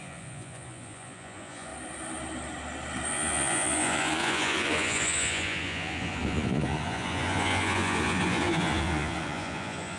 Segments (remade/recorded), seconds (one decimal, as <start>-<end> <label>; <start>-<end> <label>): 0.0-1.7 remade; 1.7-3.1 recorded; 3.1-10.0 remade